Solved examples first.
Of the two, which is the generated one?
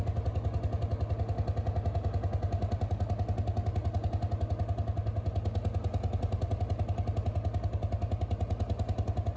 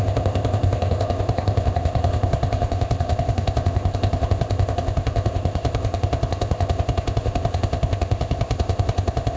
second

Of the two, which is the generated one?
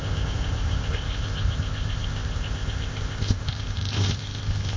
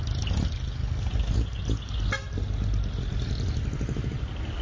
first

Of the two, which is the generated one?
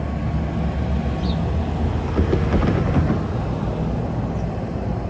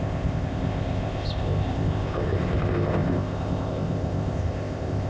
second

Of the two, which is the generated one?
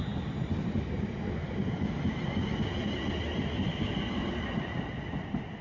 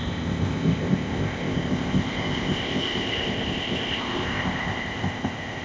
second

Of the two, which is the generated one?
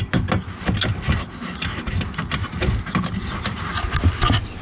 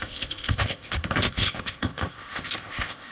second